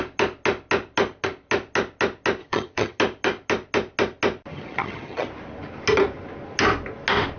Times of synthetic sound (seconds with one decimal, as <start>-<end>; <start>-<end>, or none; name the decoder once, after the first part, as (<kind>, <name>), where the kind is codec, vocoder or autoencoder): 2.4-3.0 (vocoder, HiFi-GAN); 4.5-5.3